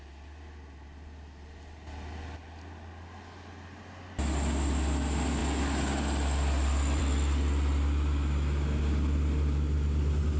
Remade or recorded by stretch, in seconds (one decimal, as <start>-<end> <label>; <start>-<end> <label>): 0.0-10.4 recorded